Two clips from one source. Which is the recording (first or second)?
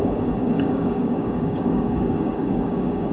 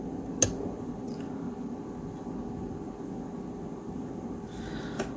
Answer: second